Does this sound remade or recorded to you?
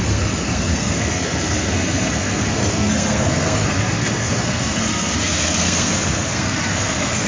remade